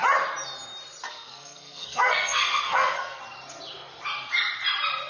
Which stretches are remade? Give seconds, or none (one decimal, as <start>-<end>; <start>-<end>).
1.1-3.2